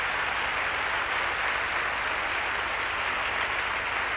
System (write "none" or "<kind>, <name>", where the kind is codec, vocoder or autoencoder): none